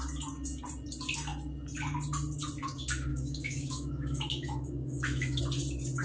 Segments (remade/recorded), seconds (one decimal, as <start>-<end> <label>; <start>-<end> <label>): 0.0-3.1 recorded; 3.1-5.4 remade; 5.4-6.0 recorded